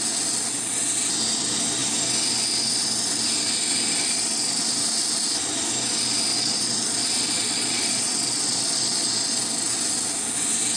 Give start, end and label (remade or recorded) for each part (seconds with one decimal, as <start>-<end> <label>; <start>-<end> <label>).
0.0-6.3 recorded; 6.3-9.4 remade; 9.4-10.8 recorded